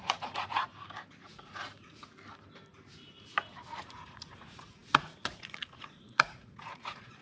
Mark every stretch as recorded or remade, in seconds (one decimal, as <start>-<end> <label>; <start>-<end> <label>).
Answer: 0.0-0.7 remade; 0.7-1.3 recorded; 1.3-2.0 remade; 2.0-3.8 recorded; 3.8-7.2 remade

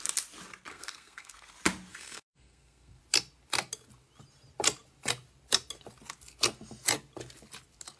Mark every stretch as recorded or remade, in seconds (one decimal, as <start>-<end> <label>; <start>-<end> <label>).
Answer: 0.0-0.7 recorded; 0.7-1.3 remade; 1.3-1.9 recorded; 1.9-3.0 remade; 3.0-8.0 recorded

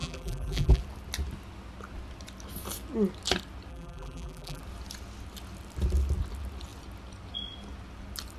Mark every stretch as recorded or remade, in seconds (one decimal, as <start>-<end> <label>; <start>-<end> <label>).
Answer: 0.0-0.8 remade; 0.8-3.7 recorded; 3.7-4.6 remade; 4.6-8.4 recorded